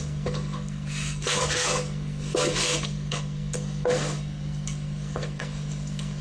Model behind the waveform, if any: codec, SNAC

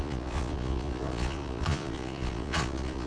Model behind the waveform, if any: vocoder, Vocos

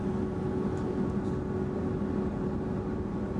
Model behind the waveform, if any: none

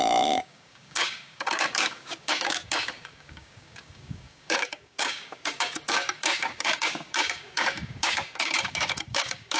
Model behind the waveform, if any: codec, DAC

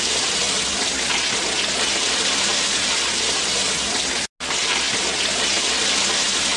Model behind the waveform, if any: none